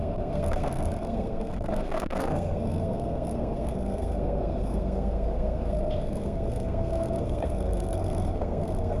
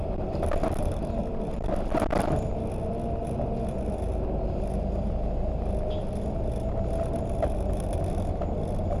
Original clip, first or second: second